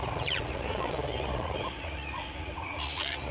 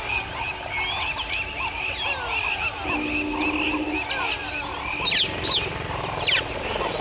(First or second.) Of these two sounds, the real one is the second